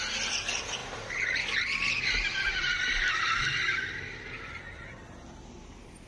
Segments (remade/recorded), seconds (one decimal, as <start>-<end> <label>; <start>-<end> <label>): 0.0-6.1 recorded

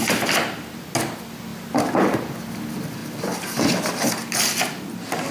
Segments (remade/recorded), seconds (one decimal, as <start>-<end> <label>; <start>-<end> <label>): 0.0-5.3 recorded

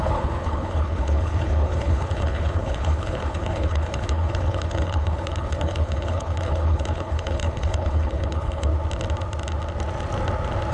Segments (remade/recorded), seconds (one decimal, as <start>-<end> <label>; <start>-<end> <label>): 0.0-8.7 remade; 8.7-10.7 recorded